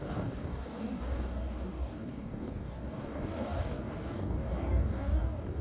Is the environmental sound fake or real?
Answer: fake